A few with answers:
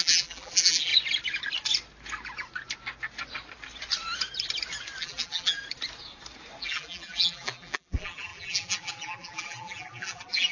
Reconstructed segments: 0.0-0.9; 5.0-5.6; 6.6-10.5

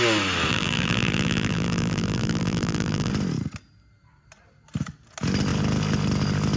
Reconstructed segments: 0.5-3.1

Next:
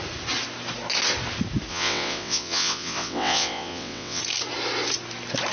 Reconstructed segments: 1.7-4.2